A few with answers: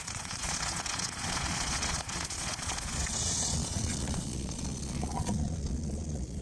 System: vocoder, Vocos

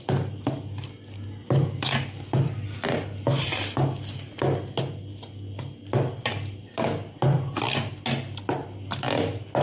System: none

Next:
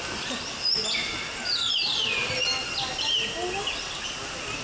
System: none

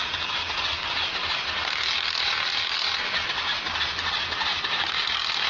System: none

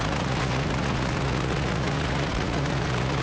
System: vocoder, Vocos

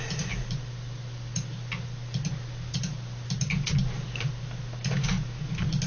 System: none